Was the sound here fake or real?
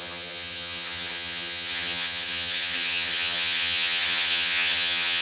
fake